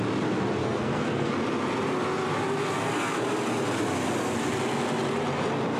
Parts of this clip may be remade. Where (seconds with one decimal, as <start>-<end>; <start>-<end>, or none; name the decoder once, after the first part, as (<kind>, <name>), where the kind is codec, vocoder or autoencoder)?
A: 0.6-1.3 (codec, SNAC)